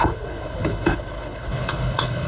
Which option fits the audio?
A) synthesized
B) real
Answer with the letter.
A